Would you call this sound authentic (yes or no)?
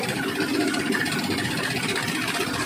yes